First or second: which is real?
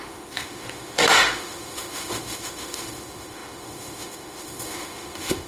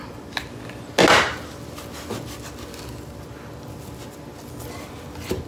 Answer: second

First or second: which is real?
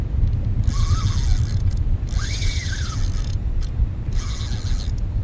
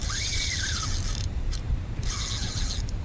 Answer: first